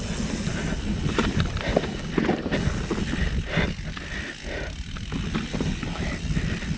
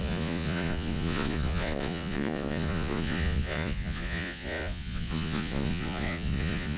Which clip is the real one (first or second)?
first